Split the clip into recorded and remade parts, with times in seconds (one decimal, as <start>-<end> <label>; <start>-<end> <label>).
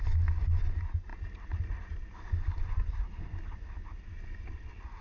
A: 0.0-5.0 recorded